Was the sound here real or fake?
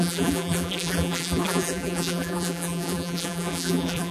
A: fake